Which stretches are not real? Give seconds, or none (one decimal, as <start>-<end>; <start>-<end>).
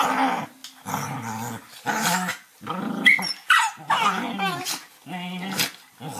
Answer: none